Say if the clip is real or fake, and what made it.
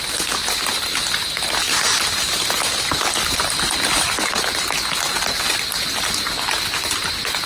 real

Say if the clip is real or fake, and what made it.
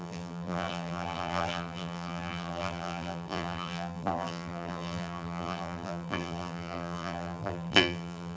fake, vocoder, BigVGAN v2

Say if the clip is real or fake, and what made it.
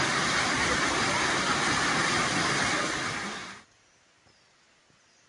real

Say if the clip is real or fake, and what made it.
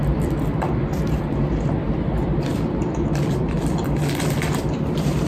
fake, vocoder, BigVGAN v2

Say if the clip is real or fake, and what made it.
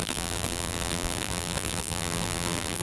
fake, vocoder, BigVGAN v2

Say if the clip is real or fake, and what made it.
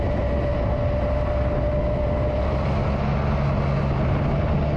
real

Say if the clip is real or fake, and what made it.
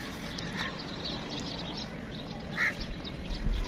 real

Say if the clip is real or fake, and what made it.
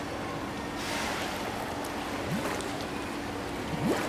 real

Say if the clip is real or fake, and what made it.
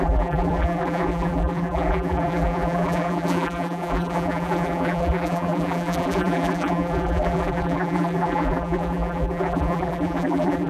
fake, vocoder, BigVGAN v2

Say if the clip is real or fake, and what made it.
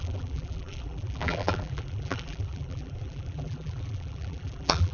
fake, vocoder, BigVGAN v2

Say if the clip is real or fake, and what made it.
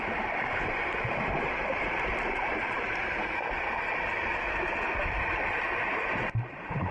fake, vocoder, BigVGAN v2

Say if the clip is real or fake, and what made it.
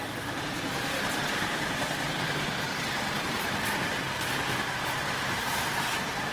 fake, vocoder, BigVGAN v2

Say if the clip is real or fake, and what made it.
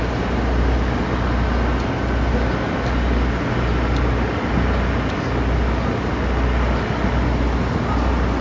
real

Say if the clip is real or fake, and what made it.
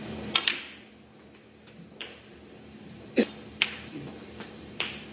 fake, vocoder, BigVGAN v2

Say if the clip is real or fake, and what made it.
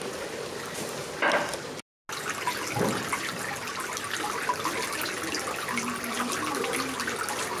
real